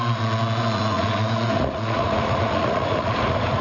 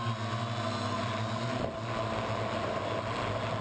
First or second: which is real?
second